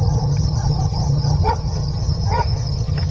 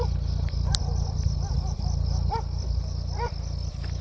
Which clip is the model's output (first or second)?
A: first